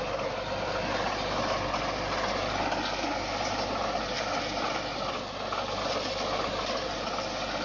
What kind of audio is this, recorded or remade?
recorded